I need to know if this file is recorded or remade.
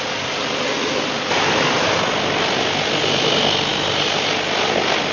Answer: recorded